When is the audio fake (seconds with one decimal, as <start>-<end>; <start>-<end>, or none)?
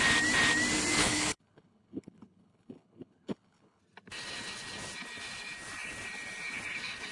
1.0-3.8